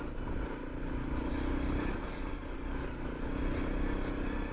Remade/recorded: recorded